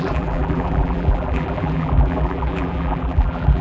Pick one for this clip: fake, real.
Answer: fake